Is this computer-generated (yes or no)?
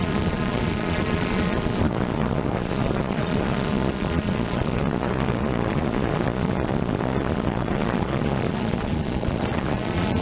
yes